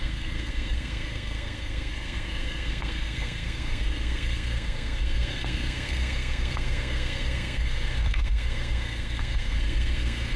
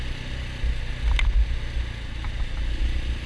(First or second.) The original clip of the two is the second